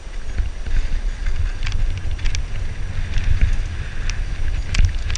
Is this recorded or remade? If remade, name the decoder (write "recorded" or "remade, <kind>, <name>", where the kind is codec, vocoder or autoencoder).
recorded